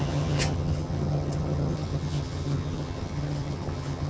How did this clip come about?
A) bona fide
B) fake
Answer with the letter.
B